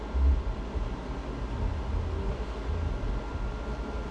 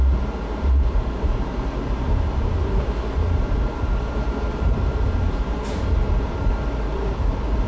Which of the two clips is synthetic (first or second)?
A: second